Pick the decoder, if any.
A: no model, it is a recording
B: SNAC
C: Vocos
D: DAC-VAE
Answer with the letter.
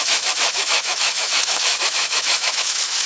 D